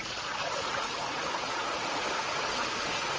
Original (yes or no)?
no